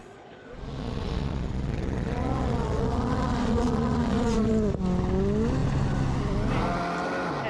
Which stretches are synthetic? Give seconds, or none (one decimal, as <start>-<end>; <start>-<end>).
0.0-4.5